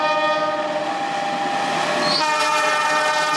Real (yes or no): yes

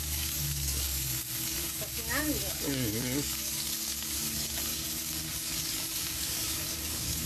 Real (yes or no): no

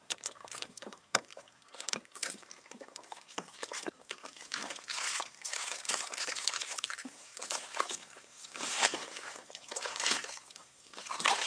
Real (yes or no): no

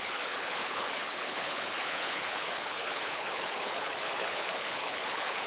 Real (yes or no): no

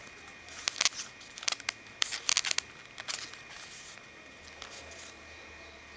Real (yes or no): yes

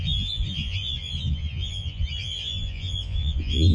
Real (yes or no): no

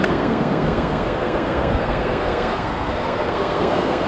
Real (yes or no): no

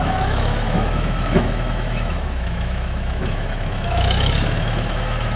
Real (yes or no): no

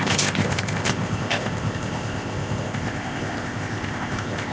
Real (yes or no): no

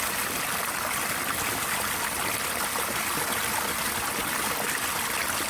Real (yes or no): yes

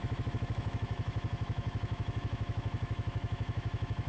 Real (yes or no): no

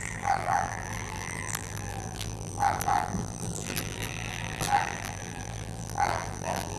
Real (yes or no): no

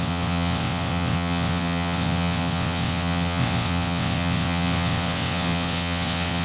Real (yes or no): no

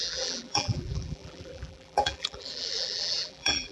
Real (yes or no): no